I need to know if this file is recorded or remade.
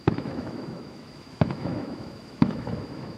remade